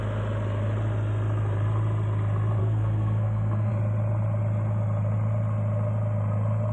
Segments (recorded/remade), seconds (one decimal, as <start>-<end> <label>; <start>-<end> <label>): 0.0-2.6 recorded; 2.6-3.7 remade; 3.7-6.7 recorded